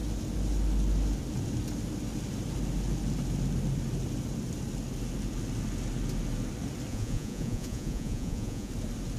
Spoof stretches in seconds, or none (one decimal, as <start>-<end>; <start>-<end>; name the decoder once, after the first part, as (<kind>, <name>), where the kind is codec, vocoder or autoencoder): 6.9-8.7 (vocoder, Vocos)